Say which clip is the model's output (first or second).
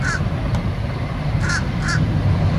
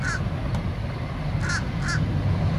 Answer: first